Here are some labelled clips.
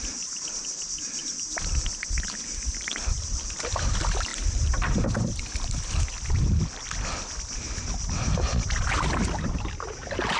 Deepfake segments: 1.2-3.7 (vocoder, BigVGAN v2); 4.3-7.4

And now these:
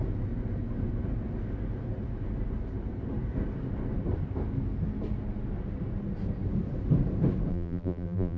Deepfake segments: 7.5-8.4 (vocoder, BigVGAN v2)

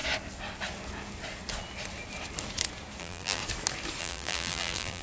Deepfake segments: 3.0-3.4 (vocoder, BigVGAN v2); 4.0-5.0